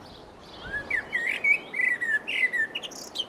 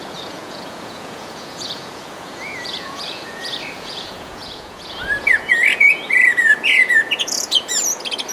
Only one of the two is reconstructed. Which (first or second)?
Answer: second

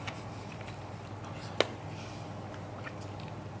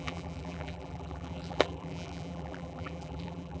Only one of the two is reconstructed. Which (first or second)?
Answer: second